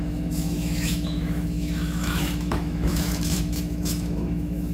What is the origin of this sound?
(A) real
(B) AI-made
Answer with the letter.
B